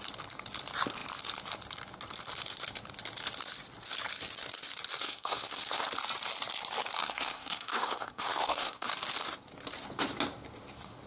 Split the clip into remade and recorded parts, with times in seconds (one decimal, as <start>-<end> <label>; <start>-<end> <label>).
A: 0.0-5.0 recorded; 5.0-5.8 remade; 5.8-7.0 recorded; 7.0-8.9 remade; 8.9-11.1 recorded